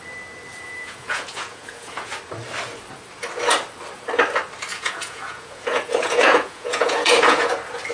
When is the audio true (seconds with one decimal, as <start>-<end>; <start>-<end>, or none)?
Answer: 0.0-0.5; 2.1-4.7; 7.5-7.9